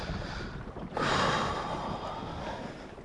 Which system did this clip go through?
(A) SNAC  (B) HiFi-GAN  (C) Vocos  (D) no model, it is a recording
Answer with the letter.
D